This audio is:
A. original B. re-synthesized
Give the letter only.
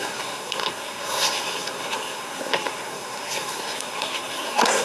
B